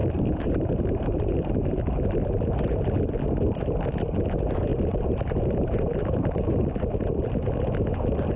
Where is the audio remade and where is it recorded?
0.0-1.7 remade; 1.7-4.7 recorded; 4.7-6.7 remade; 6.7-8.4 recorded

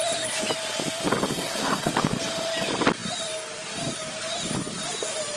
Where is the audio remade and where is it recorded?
0.0-1.3 recorded; 1.3-1.9 remade; 1.9-5.4 recorded

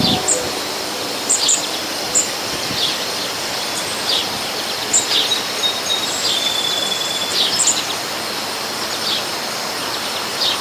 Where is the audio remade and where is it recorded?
0.0-1.8 remade; 1.8-2.4 recorded; 2.4-4.2 remade; 4.2-5.9 recorded; 5.9-10.6 remade

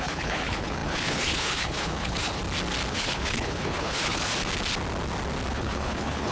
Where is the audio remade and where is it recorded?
0.0-2.4 remade; 2.4-2.9 recorded; 2.9-4.3 remade; 4.3-5.5 recorded; 5.5-6.3 remade

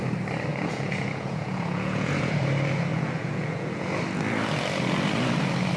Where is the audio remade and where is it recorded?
0.0-0.5 recorded; 0.5-2.4 remade; 2.4-2.9 recorded; 2.9-3.8 remade; 3.8-5.8 recorded

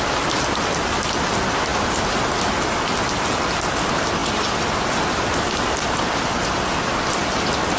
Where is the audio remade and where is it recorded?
0.0-7.8 recorded

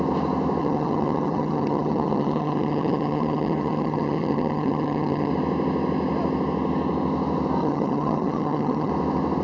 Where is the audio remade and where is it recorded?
0.0-0.6 recorded; 0.6-5.3 remade; 5.3-7.6 recorded; 7.6-8.9 remade; 8.9-9.4 recorded